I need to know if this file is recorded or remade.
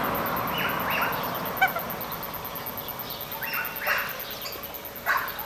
recorded